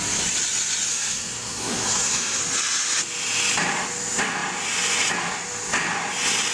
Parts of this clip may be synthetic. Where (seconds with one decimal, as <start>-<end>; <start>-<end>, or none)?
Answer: 0.9-2.4